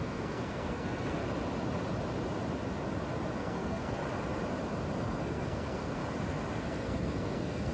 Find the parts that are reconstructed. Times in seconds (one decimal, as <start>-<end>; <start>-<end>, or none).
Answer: 0.0-1.2; 3.4-4.0; 5.0-6.0; 6.6-7.7